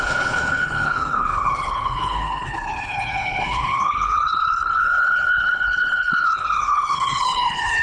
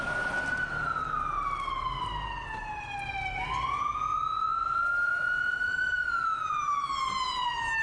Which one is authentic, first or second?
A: second